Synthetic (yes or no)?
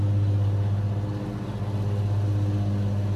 no